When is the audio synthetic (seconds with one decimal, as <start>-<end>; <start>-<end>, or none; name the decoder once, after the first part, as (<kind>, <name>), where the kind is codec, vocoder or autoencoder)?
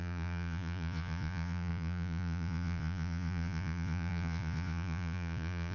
0.0-5.7 (vocoder, Vocos)